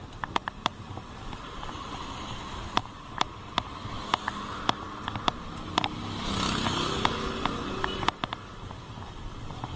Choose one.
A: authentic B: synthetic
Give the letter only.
A